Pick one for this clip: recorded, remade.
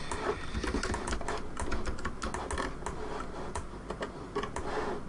recorded